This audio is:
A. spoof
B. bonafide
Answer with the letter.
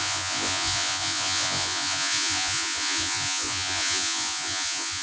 A